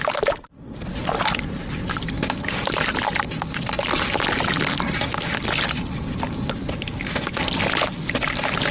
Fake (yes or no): no